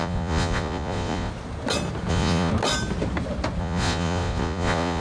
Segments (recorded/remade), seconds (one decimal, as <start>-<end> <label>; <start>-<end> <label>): 0.0-1.3 remade; 1.3-2.1 recorded; 2.1-2.5 remade; 2.5-3.6 recorded; 3.6-5.0 remade